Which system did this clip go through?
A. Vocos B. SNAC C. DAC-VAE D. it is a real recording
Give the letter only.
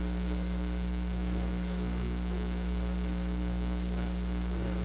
B